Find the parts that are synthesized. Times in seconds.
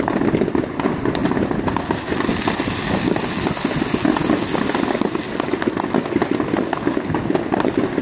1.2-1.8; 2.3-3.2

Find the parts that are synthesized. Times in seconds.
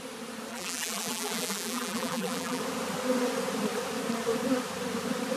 0.5-2.6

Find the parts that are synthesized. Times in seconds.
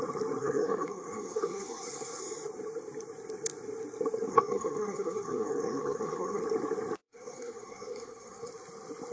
0.4-2.2; 4.3-6.4; 7.0-8.5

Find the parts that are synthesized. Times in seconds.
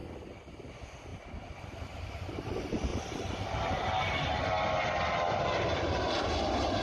none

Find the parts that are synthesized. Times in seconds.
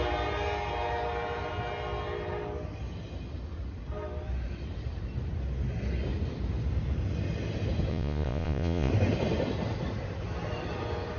7.9-8.9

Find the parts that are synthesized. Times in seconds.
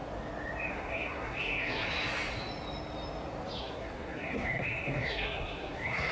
0.7-1.9; 3.6-6.1